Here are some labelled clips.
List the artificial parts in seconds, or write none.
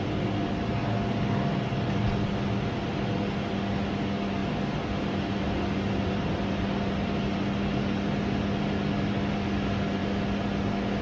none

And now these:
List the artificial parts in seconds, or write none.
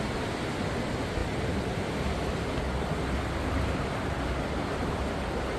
none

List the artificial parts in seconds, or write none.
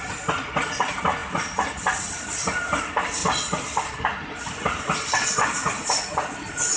none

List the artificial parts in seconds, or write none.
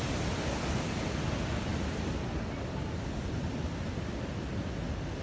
none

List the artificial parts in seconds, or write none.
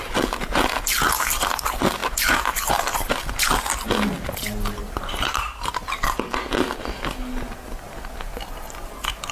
4.8-5.7